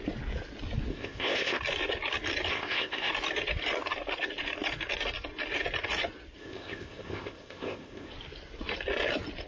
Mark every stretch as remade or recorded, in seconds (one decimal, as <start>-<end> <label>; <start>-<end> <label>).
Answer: 0.0-0.9 recorded; 0.9-1.6 remade; 1.6-2.5 recorded; 2.5-3.1 remade; 3.1-6.4 recorded; 6.4-8.1 remade; 8.1-9.5 recorded